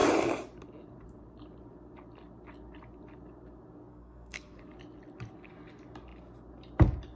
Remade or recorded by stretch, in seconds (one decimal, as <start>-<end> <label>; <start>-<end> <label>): 0.0-3.9 recorded; 3.9-4.6 remade; 4.6-7.2 recorded